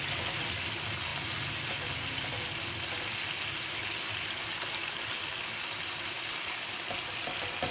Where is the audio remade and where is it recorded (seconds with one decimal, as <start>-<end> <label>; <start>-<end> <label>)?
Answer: 0.0-7.7 recorded